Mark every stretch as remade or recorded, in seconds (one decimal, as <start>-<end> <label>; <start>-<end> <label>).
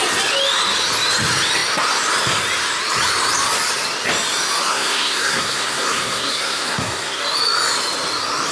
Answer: 0.0-4.7 recorded; 4.7-7.2 remade; 7.2-8.5 recorded